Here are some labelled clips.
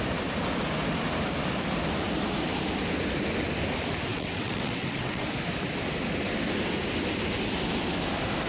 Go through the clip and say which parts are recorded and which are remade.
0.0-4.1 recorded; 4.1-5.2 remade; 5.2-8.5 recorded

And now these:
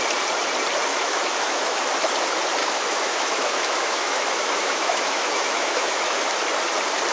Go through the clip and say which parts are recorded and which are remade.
0.0-0.9 recorded; 0.9-1.8 remade; 1.8-2.6 recorded; 2.6-6.2 remade; 6.2-7.1 recorded